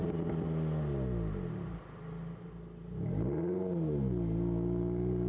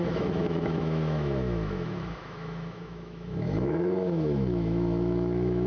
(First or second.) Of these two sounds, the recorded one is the first